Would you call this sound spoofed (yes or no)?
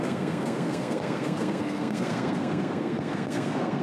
yes